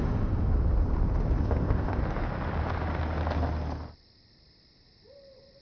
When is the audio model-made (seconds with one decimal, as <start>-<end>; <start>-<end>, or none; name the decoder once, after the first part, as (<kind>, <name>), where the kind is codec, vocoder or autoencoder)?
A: 1.4-2.0 (codec, ZipCodec)